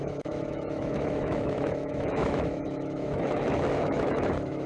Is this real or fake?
fake